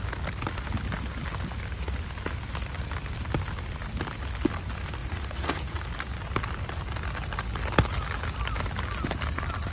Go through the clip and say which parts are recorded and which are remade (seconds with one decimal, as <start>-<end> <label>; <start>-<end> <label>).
0.0-5.0 recorded; 5.0-5.8 remade; 5.8-9.7 recorded